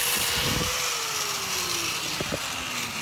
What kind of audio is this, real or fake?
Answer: real